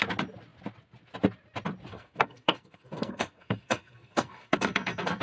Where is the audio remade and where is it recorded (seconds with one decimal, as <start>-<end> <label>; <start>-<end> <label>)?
0.0-1.9 recorded; 1.9-5.2 remade